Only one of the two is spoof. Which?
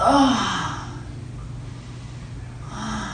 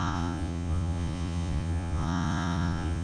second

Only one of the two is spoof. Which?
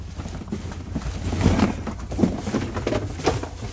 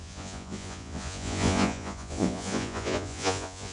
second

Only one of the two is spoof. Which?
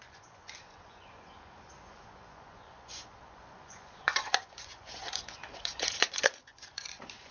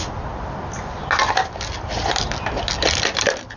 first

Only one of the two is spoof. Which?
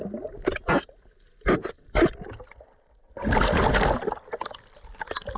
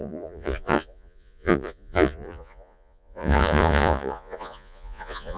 second